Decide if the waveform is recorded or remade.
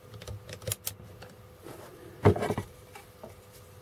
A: recorded